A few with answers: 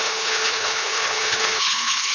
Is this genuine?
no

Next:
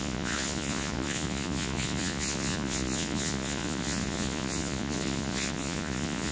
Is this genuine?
no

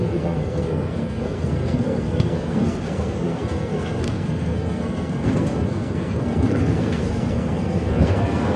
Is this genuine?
no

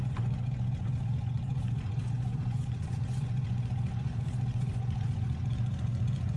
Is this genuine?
no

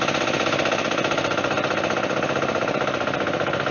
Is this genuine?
yes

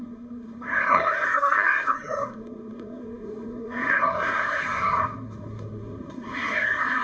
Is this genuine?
no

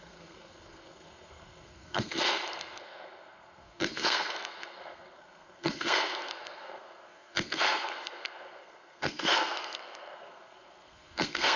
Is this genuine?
no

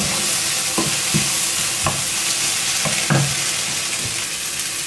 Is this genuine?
yes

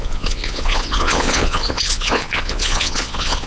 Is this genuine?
no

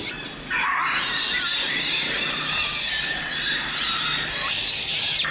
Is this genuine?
yes